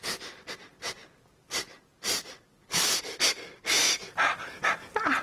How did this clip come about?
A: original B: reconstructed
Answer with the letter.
A